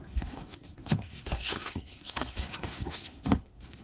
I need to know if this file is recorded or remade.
remade